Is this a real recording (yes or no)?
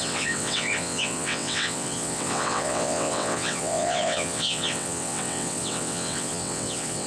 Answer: no